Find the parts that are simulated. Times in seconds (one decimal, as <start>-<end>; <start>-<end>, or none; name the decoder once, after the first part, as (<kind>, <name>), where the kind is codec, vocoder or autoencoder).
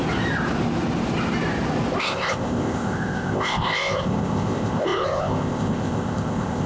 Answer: 2.0-6.7 (codec, ZipCodec)